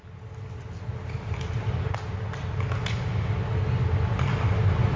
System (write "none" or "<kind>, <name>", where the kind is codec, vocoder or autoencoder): none